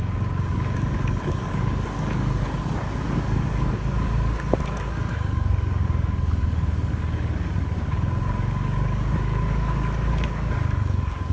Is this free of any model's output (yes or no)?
no